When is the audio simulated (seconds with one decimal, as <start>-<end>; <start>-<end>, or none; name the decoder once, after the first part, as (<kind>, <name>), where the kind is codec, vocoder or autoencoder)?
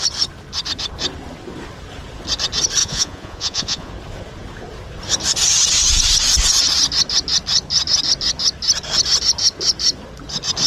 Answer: 2.8-3.9 (vocoder, Vocos)